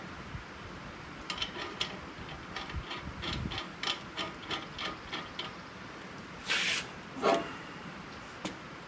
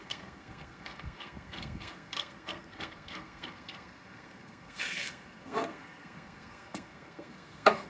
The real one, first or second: first